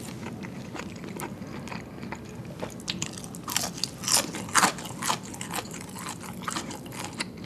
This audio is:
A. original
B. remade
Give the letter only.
A